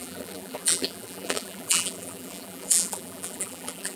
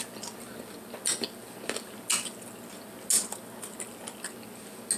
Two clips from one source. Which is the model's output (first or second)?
first